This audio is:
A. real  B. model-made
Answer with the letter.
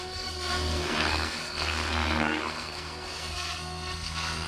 B